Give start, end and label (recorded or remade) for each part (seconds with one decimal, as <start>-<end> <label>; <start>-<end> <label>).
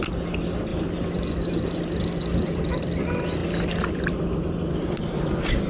0.0-5.7 recorded